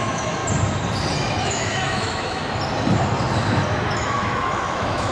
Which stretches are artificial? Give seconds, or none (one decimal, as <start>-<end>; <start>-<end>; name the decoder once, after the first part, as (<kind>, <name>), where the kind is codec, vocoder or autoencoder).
0.0-0.4 (autoencoder, DAC-VAE); 1.4-2.4; 3.9-5.1